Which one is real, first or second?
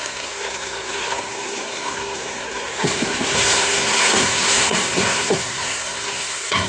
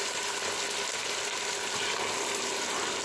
second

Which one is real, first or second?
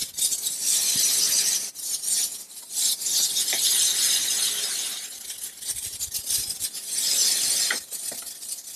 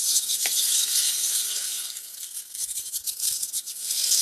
first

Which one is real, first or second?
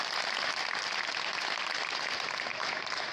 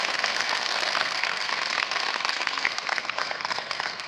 first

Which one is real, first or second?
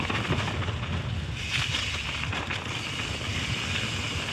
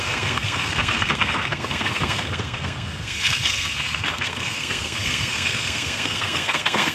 first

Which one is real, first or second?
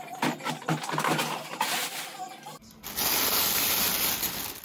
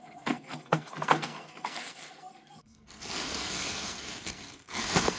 first